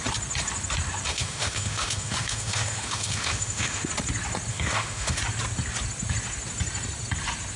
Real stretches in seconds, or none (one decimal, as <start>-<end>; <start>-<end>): 0.0-1.1; 3.9-4.5; 5.2-7.6